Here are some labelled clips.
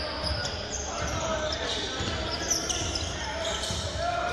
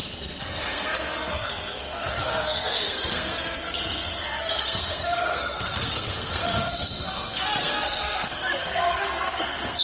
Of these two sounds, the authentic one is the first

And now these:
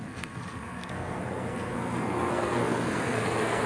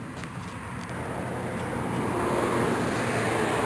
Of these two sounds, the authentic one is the second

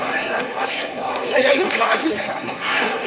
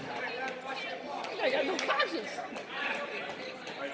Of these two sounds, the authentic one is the second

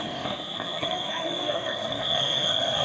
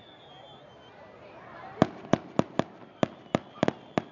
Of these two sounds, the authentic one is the second